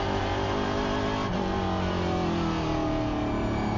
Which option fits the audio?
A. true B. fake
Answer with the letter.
A